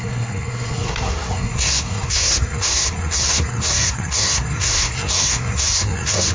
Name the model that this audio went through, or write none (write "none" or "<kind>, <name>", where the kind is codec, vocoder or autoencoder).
codec, SNAC